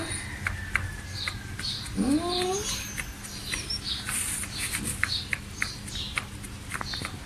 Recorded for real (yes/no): yes